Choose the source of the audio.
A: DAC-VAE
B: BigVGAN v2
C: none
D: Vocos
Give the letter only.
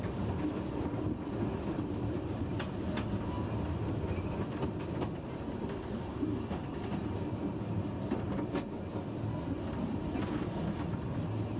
C